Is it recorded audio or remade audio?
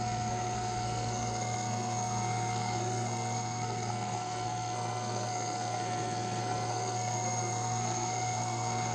remade